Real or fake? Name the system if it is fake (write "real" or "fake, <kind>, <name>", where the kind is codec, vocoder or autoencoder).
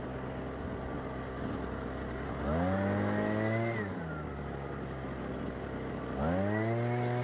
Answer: real